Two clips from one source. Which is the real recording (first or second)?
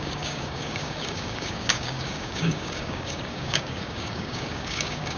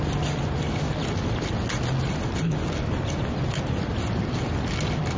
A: second